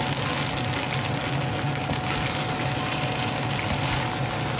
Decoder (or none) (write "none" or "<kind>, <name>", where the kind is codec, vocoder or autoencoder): none